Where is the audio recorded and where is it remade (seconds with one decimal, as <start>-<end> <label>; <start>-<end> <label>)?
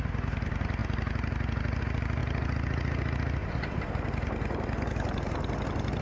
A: 0.0-6.0 recorded